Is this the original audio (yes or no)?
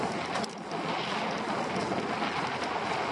yes